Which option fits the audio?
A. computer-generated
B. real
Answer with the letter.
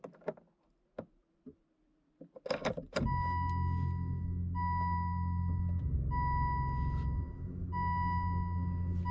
B